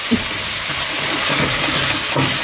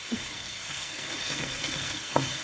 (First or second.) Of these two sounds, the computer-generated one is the second